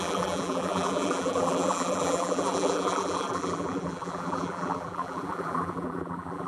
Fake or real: fake